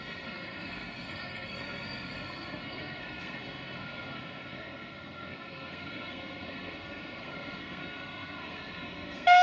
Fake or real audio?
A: fake